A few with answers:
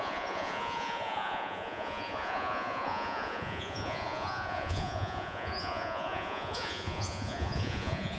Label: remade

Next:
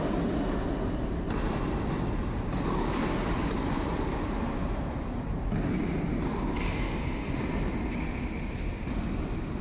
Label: recorded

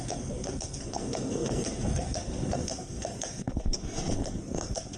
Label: remade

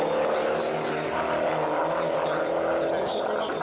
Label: recorded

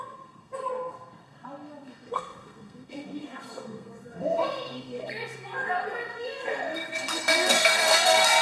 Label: remade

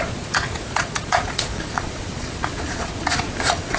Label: remade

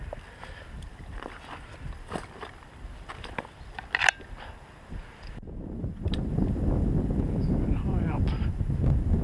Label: remade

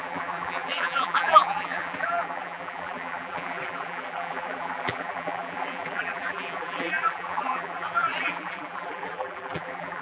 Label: remade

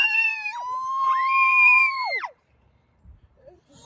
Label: remade